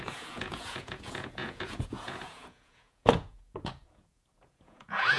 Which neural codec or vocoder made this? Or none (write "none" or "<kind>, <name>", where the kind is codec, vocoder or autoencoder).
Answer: vocoder, Vocos